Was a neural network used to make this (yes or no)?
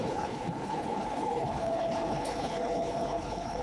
yes